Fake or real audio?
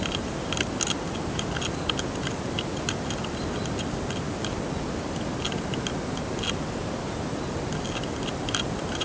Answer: real